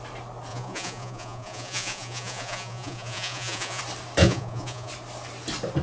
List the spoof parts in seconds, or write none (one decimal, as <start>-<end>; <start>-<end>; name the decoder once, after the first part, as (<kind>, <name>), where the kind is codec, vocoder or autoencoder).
0.5-3.8 (vocoder, Vocos); 4.2-4.9